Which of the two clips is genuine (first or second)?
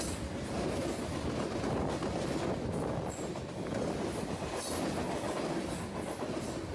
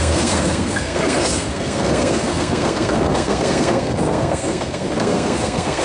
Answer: first